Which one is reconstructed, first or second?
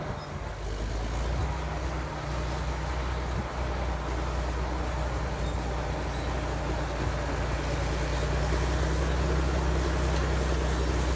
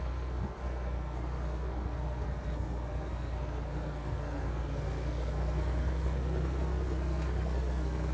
second